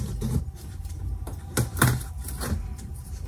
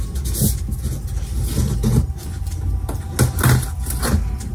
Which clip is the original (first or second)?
second